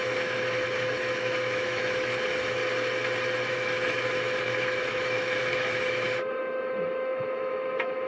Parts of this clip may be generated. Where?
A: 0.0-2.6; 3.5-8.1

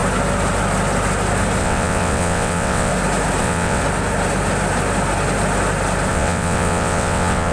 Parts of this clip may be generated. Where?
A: 1.6-2.9; 3.4-3.8; 6.1-7.5

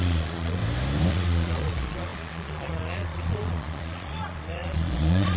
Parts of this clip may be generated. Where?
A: 0.0-0.6; 1.1-5.4

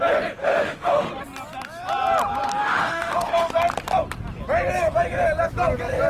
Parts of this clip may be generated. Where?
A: 0.4-1.1; 2.6-3.5

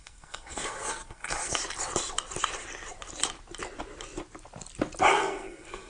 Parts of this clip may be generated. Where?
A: 0.0-1.6; 5.1-5.9

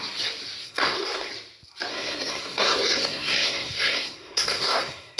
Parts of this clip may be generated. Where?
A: 0.6-1.3; 1.9-5.2